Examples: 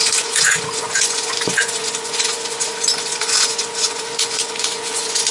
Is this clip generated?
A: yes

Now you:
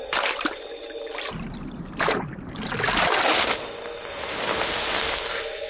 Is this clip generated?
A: no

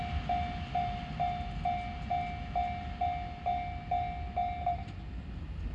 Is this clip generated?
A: no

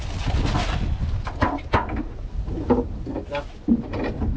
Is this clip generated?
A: no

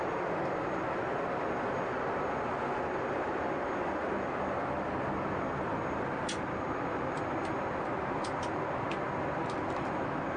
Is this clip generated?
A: no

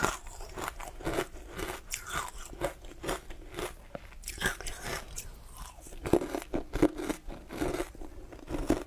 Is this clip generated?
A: no